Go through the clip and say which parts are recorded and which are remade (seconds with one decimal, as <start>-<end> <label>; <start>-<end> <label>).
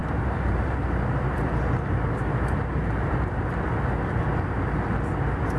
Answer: 0.0-3.4 remade; 3.4-5.6 recorded